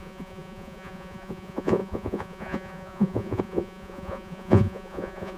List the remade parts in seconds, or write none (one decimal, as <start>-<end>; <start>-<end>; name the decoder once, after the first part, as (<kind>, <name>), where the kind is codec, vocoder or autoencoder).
0.0-5.4 (vocoder, Vocos)